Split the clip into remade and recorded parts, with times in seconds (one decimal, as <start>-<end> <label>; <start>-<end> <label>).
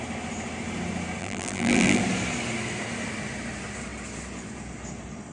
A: 0.0-1.2 recorded; 1.2-2.0 remade; 2.0-5.3 recorded